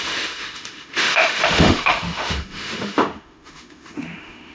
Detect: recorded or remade remade